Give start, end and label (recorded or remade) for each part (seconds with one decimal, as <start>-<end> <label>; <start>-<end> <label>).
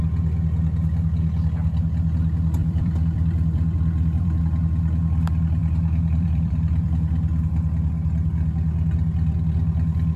0.0-2.6 recorded; 2.6-4.4 remade; 4.4-5.6 recorded; 5.6-6.9 remade; 6.9-10.2 recorded